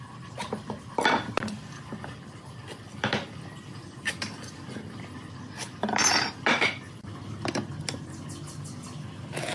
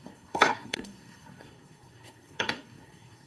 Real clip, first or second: first